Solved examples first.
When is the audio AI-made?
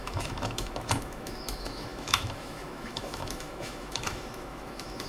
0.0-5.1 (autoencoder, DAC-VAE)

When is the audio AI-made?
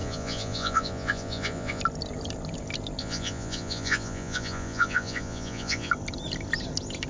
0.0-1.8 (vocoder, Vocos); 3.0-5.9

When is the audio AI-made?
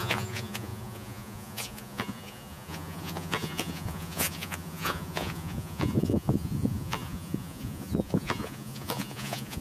0.0-9.6 (vocoder, Vocos)